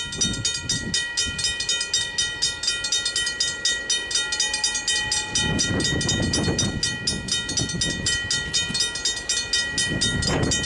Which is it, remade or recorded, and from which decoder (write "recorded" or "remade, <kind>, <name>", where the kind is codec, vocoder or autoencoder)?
recorded